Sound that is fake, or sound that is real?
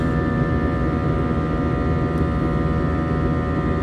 real